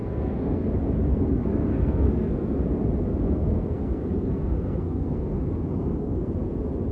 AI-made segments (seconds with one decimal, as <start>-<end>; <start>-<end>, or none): 0.0-0.7; 1.1-2.6; 3.1-6.3